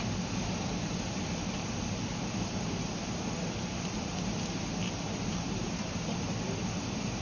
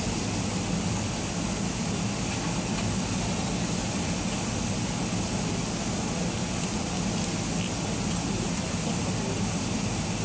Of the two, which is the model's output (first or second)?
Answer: first